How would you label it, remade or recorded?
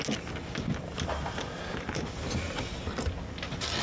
recorded